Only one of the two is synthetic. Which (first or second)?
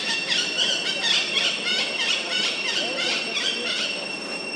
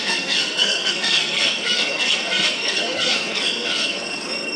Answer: second